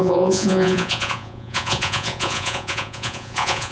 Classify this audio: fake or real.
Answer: fake